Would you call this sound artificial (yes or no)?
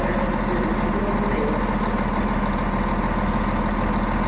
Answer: no